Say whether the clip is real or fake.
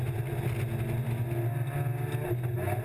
real